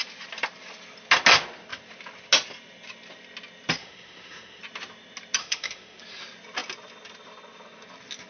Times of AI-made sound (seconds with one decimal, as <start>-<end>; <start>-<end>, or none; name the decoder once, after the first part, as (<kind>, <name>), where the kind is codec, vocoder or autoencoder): 3.8-4.6 (autoencoder, DAC-VAE); 5.4-6.0